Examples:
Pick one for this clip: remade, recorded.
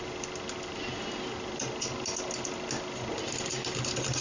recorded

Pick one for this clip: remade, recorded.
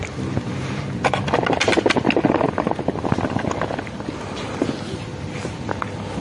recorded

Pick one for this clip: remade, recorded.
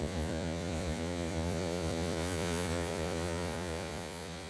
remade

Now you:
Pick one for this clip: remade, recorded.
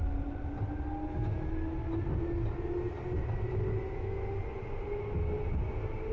recorded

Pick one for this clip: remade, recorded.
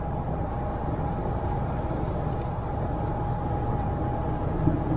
remade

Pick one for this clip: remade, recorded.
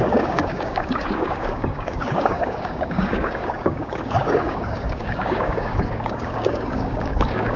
remade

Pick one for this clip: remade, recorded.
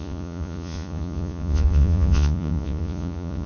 remade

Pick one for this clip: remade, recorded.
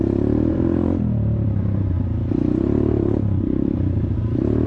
remade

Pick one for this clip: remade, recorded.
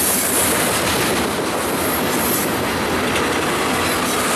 recorded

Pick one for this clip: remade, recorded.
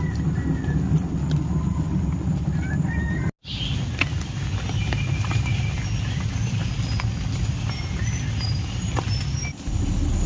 recorded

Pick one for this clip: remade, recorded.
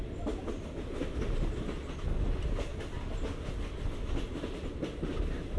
recorded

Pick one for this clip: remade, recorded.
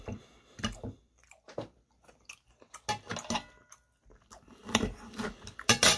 recorded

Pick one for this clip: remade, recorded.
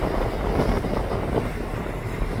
recorded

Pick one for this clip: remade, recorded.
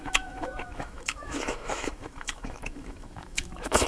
remade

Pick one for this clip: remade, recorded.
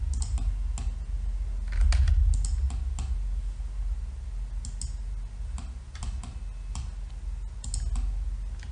recorded